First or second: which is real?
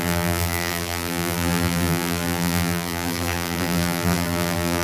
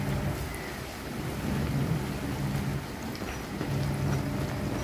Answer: second